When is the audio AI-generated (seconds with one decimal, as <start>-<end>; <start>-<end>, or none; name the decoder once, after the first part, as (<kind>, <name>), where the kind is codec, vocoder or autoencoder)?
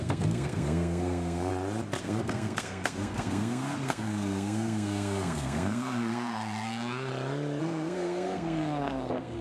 0.0-1.5 (codec, SNAC); 2.0-7.1; 7.6-9.4